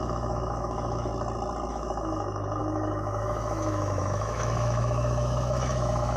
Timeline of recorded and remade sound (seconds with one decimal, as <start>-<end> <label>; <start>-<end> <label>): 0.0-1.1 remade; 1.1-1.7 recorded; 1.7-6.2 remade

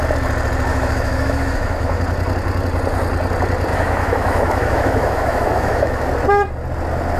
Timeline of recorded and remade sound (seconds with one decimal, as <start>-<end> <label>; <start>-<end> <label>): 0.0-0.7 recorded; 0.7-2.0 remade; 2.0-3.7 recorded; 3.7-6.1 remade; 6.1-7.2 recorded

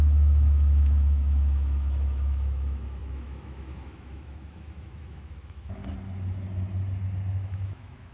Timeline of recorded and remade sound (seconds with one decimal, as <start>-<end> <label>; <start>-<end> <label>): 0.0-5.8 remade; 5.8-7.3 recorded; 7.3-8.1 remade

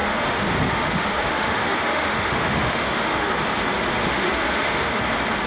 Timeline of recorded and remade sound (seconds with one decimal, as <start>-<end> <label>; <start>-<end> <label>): 0.0-3.3 remade; 3.3-4.0 recorded; 4.0-5.0 remade; 5.0-5.5 recorded

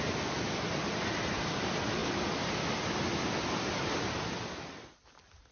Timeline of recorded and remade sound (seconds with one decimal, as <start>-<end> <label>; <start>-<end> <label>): 0.0-5.5 recorded

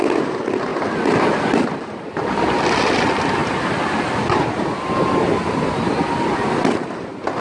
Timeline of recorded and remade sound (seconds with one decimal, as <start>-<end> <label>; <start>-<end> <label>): 0.0-7.4 recorded